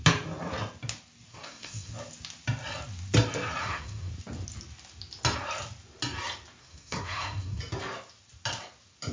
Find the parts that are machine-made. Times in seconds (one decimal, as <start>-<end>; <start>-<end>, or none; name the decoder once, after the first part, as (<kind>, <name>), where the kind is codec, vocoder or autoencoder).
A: 1.3-1.9 (codec, SNAC); 3.6-4.1; 6.6-7.6